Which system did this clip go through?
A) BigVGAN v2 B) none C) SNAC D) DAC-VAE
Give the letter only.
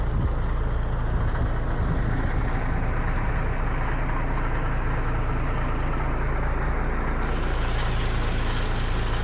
B